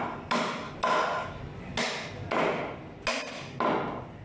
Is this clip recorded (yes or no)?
yes